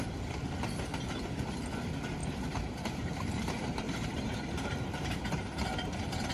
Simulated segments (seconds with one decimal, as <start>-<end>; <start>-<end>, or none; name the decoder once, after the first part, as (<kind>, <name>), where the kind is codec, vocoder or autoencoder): 2.2-6.3 (vocoder, BigVGAN v2)